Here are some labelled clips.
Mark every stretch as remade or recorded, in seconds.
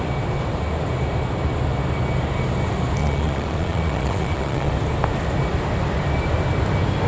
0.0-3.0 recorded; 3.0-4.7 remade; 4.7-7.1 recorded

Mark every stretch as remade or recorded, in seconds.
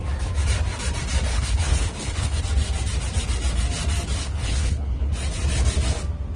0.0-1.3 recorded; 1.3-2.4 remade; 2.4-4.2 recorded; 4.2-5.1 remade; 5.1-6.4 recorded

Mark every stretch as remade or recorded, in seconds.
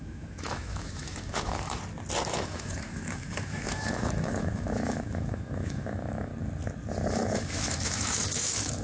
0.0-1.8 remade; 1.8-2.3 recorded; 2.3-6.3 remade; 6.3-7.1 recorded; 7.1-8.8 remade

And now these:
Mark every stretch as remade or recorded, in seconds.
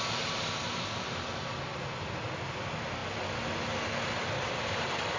0.0-5.2 recorded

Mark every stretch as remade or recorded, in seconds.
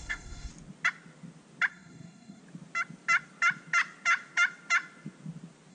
0.0-0.5 remade; 0.5-1.7 recorded; 1.7-2.4 remade; 2.4-5.7 recorded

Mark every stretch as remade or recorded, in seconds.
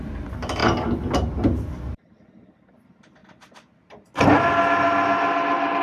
0.0-5.8 recorded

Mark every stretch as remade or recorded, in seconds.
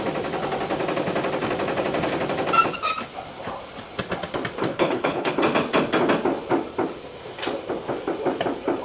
0.0-4.7 recorded; 4.7-5.3 remade; 5.3-8.8 recorded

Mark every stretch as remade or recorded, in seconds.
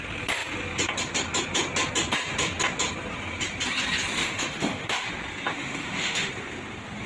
0.0-4.2 recorded; 4.2-5.1 remade; 5.1-5.5 recorded; 5.5-6.3 remade; 6.3-7.1 recorded